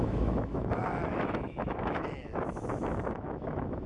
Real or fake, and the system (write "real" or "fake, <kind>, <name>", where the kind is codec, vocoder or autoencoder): fake, autoencoder, DAC-VAE